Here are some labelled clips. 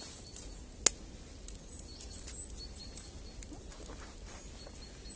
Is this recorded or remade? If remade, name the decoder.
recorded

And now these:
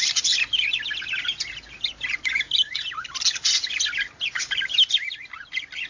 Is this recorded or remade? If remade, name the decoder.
recorded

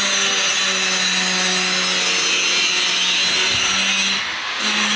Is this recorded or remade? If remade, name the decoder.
recorded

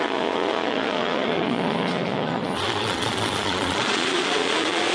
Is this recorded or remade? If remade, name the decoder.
remade, vocoder, Vocos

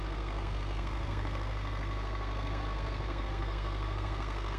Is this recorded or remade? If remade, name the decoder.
remade, codec, SNAC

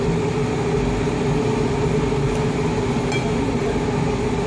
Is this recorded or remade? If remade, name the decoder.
recorded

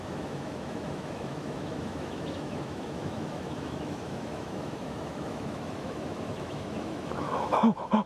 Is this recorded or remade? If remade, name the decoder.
remade, autoencoder, DAC-VAE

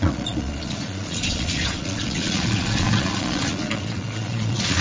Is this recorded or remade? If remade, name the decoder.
remade, vocoder, Vocos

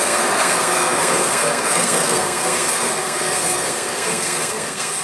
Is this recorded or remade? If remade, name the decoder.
remade, codec, SNAC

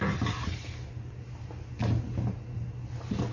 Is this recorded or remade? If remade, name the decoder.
recorded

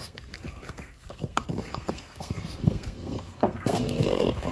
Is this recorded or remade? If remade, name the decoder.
remade, codec, SNAC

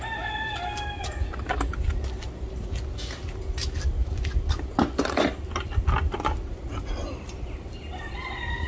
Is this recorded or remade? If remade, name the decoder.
recorded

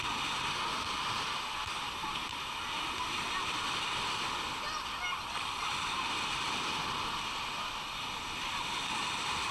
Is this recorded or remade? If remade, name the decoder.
recorded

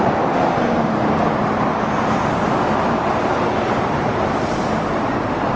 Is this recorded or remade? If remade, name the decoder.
remade, vocoder, BigVGAN v2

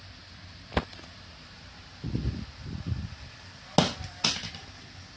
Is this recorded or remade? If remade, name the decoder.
recorded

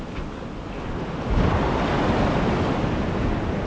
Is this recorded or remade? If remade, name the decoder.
recorded